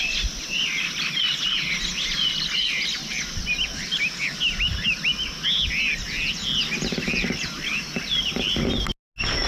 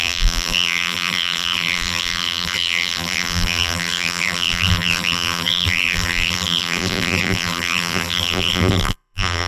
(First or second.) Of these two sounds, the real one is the first